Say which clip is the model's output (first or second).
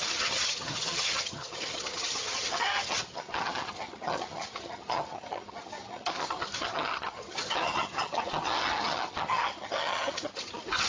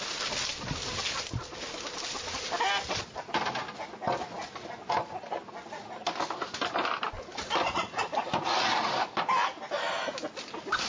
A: first